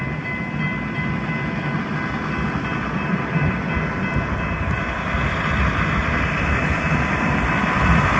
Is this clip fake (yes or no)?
no